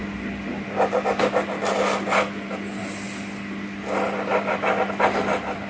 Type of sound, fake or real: real